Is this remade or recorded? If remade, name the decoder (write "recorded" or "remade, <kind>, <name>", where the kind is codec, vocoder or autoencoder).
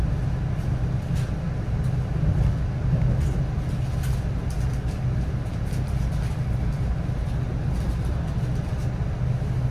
recorded